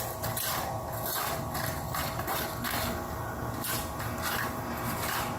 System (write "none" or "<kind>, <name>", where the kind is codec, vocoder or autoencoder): none